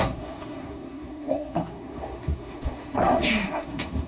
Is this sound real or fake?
fake